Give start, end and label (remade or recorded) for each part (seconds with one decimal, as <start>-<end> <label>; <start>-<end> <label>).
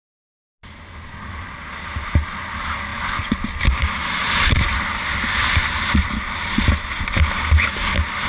0.0-8.3 recorded